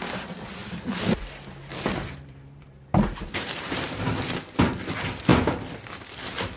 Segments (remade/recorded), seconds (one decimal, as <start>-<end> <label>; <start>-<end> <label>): 0.0-1.7 recorded; 1.7-4.1 remade; 4.1-6.6 recorded